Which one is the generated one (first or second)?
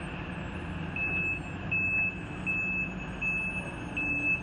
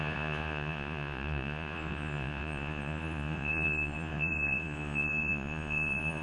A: second